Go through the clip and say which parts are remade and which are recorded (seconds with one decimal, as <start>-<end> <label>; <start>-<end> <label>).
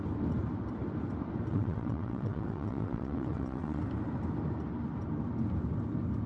0.0-1.5 recorded; 1.5-3.8 remade; 3.8-6.3 recorded